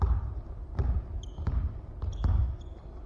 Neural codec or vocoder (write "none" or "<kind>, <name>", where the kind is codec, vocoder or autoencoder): none